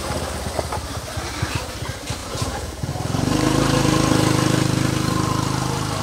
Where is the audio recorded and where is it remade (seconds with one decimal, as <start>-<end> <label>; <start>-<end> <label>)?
0.0-2.2 recorded; 2.2-2.9 remade; 2.9-6.0 recorded